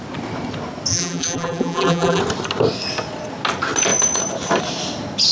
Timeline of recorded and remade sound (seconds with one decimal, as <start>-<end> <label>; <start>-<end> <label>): 0.0-0.9 recorded; 0.9-2.2 remade; 2.2-5.3 recorded